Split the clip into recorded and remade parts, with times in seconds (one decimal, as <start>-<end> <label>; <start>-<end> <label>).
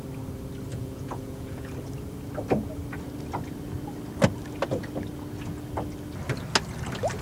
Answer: 0.0-0.7 recorded; 0.7-1.7 remade; 1.7-7.2 recorded